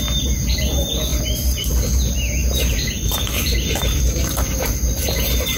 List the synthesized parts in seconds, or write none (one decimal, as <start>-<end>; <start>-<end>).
1.1-1.7; 2.4-5.6